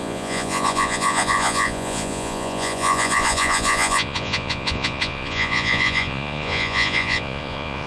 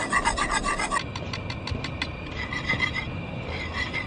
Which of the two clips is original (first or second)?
second